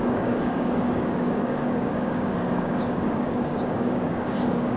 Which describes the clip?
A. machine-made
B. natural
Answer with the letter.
A